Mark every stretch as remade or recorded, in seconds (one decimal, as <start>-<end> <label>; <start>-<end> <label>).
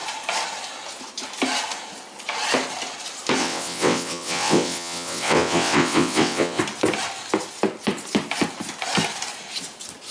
0.0-3.4 recorded; 3.4-6.6 remade; 6.6-10.1 recorded